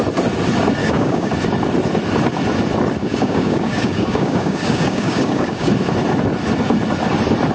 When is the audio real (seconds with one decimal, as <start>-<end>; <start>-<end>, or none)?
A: 0.0-0.8; 1.3-3.0; 5.7-7.5